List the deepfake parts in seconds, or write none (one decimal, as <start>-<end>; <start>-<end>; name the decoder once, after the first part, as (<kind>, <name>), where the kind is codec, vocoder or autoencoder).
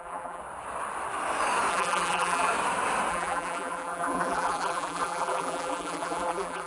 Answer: 0.0-0.4 (vocoder, BigVGAN v2); 1.7-2.5; 3.1-6.7